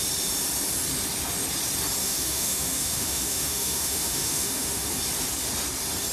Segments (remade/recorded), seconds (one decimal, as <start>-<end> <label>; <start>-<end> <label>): 0.0-2.0 recorded; 2.0-4.9 remade; 4.9-6.1 recorded